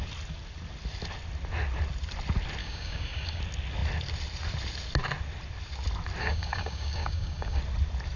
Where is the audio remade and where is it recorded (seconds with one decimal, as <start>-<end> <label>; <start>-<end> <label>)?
0.0-2.6 recorded; 2.6-3.4 remade; 3.4-6.2 recorded; 6.2-7.6 remade; 7.6-8.2 recorded